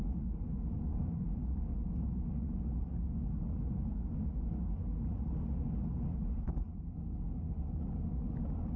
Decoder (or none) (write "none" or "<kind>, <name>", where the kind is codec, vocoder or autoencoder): none